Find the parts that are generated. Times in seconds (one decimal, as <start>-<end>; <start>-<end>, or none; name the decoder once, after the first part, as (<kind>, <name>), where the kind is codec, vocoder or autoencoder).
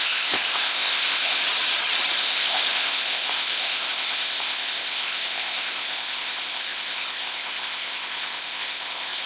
0.0-1.4 (codec, ZipCodec); 2.2-9.3